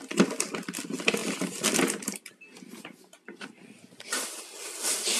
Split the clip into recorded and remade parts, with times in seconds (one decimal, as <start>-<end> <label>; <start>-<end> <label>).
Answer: 0.0-5.2 recorded